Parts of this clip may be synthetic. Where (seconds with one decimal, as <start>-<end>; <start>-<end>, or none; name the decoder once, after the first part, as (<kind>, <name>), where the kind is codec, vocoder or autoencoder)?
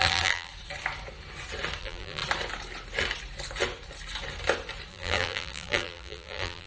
0.0-0.5 (vocoder, BigVGAN v2); 1.8-2.2; 4.9-6.7